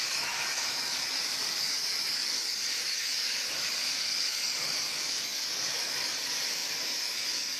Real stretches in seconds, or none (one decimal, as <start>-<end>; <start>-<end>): none

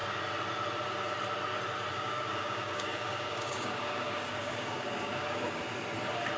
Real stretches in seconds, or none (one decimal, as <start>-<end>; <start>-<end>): 0.0-1.9; 5.6-6.4

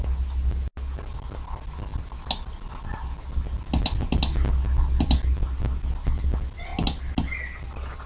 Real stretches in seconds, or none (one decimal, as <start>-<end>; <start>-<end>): 0.0-8.1

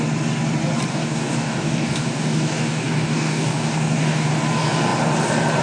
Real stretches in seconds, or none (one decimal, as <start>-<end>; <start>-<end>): 0.0-0.9; 4.3-5.6

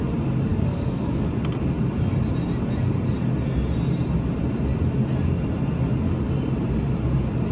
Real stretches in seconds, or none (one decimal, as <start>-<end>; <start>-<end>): 0.0-0.5; 1.1-7.5